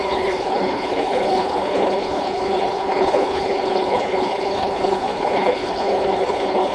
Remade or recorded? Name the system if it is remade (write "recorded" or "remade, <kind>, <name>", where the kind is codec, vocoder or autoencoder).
remade, codec, HILCodec